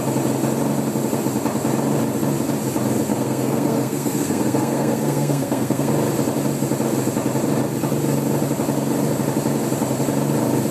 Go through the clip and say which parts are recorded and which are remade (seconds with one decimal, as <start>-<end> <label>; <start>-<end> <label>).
0.0-3.1 recorded; 3.1-5.9 remade; 5.9-10.7 recorded